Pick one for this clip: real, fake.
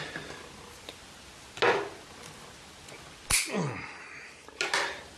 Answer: real